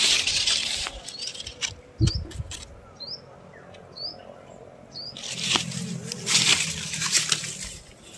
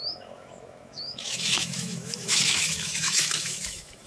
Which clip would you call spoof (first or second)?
second